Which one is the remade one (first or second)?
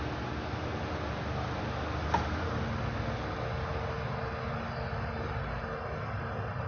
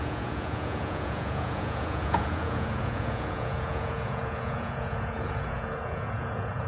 second